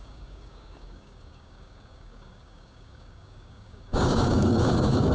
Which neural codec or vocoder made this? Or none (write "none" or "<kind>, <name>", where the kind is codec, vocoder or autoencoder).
codec, DAC